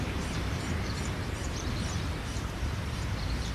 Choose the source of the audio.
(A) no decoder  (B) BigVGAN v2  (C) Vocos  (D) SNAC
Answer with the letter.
B